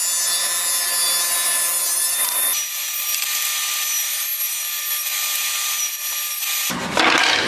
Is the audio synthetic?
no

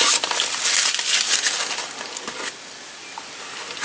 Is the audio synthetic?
no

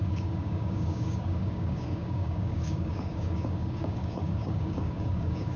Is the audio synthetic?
yes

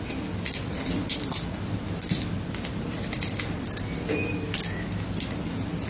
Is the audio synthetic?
no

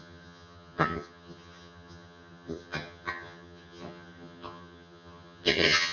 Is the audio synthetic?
yes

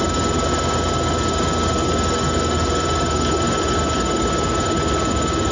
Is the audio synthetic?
no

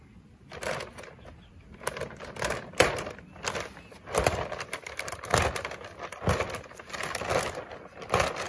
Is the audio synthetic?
no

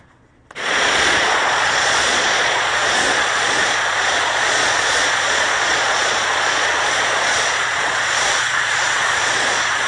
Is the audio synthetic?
yes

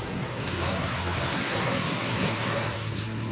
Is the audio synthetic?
yes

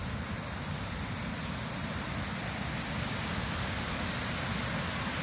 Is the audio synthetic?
no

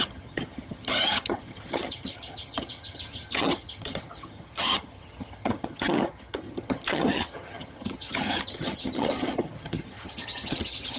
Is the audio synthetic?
yes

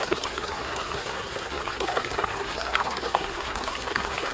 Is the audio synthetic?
yes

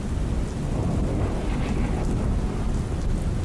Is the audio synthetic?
no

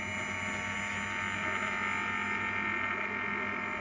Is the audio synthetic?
no